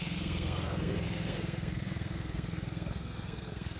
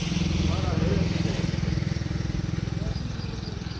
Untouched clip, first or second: second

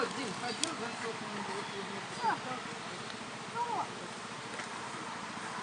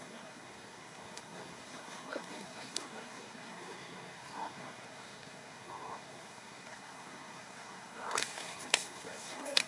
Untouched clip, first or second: first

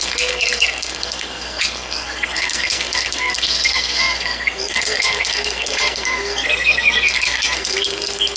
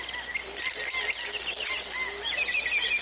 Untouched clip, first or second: second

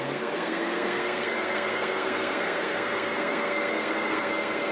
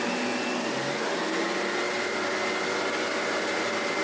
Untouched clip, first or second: second